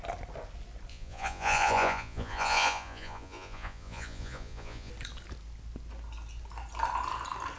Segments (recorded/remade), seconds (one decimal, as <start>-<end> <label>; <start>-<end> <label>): 0.0-0.9 recorded; 0.9-4.9 remade; 4.9-7.6 recorded